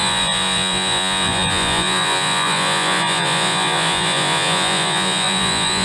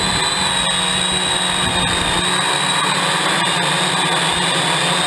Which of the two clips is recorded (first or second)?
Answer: second